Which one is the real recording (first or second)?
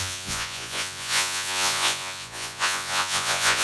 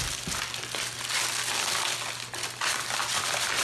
second